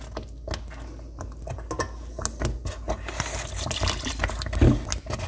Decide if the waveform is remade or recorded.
recorded